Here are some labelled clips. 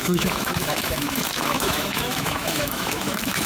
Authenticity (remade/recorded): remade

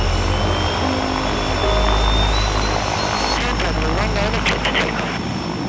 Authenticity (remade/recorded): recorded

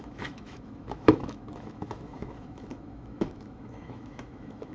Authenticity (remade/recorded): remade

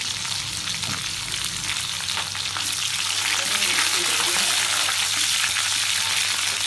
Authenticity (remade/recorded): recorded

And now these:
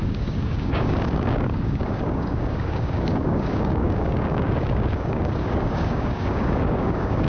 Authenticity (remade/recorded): remade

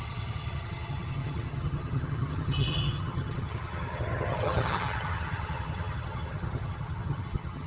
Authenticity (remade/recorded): remade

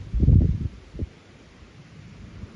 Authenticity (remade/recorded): recorded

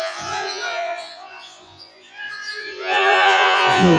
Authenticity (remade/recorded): remade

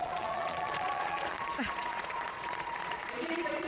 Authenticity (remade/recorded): remade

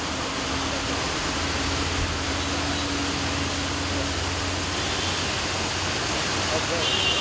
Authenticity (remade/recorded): recorded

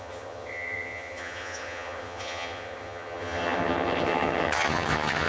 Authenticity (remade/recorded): remade